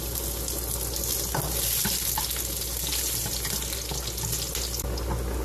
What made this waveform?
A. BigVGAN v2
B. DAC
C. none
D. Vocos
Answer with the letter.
C